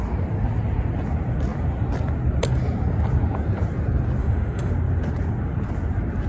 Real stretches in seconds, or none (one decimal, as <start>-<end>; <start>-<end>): 0.0-4.2; 4.7-6.3